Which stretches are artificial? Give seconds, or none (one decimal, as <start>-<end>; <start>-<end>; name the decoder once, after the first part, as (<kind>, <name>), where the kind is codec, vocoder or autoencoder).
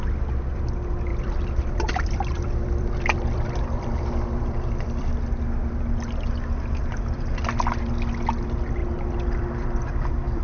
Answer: 1.1-5.1 (vocoder, BigVGAN v2); 8.8-9.9